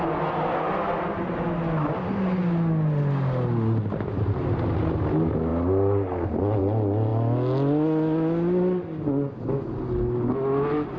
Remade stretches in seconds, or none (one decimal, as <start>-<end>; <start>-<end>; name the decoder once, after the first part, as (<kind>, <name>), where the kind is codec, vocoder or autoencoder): none